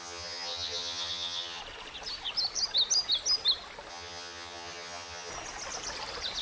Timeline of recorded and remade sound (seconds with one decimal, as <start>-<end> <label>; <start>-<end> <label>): 0.0-1.6 remade; 1.6-3.9 recorded; 3.9-5.3 remade; 5.3-6.4 recorded